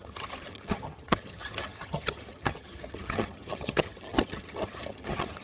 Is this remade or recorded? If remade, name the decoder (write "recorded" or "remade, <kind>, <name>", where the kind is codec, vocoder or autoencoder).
remade, vocoder, HiFi-GAN